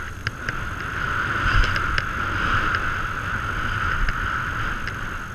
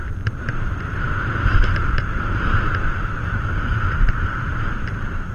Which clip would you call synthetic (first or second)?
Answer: second